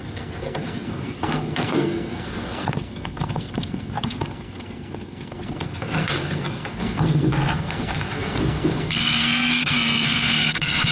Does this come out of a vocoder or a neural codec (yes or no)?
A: yes